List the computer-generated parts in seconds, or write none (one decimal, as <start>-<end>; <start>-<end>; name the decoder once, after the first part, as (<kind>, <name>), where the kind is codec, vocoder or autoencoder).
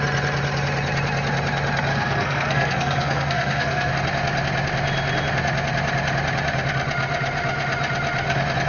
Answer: 1.9-3.9 (codec, SNAC)